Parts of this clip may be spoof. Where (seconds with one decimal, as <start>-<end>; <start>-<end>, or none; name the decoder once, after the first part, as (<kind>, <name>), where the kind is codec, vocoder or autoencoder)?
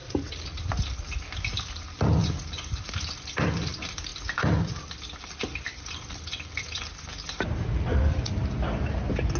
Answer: 0.0-0.7 (vocoder, BigVGAN v2); 4.1-6.8